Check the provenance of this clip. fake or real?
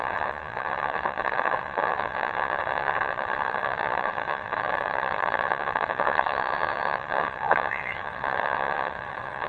fake